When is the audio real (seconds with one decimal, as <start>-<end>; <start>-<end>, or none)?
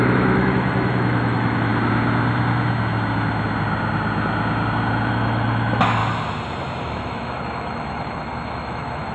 1.7-5.1; 6.0-6.8